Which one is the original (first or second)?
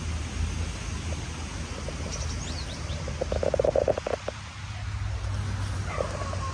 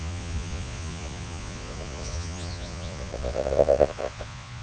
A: first